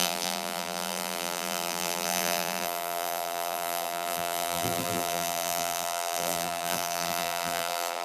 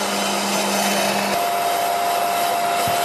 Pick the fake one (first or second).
first